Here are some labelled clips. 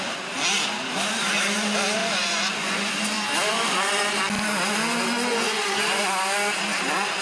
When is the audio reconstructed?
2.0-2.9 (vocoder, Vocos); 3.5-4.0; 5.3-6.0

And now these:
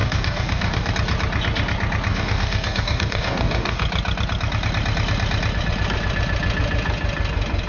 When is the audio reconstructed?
0.0-0.9 (codec, DAC); 2.1-3.8